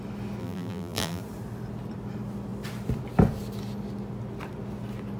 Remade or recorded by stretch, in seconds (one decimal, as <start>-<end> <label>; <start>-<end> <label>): 0.0-0.4 recorded; 0.4-1.2 remade; 1.2-5.2 recorded

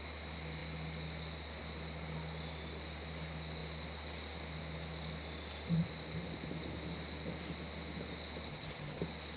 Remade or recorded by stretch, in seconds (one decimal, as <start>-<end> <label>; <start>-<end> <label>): 0.0-8.5 recorded; 8.5-9.0 remade; 9.0-9.4 recorded

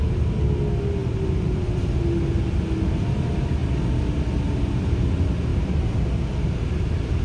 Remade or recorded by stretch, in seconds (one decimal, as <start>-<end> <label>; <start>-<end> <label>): 0.0-1.0 recorded; 1.0-1.8 remade; 1.8-5.5 recorded; 5.5-6.1 remade; 6.1-7.2 recorded

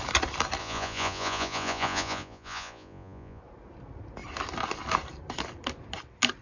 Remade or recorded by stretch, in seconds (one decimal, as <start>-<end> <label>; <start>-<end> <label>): 0.0-0.6 recorded; 0.6-3.4 remade; 3.4-6.4 recorded

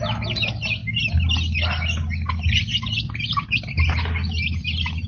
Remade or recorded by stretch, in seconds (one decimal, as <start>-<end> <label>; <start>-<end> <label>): 0.0-5.1 recorded

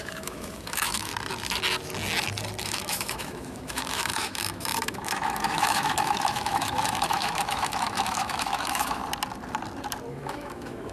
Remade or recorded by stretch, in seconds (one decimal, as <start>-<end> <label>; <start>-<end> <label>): 0.0-1.1 remade; 1.1-2.6 recorded; 2.6-9.0 remade; 9.0-10.1 recorded; 10.1-10.9 remade

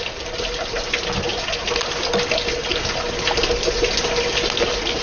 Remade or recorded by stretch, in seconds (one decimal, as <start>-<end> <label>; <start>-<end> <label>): 0.0-5.0 recorded

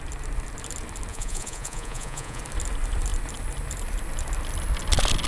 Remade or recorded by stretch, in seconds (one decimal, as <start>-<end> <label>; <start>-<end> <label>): 0.0-1.1 recorded; 1.1-2.4 remade; 2.4-5.3 recorded